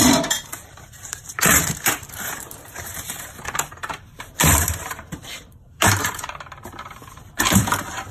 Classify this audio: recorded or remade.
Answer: remade